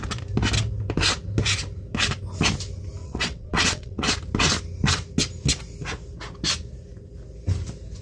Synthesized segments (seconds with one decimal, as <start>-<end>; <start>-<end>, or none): 3.0-4.1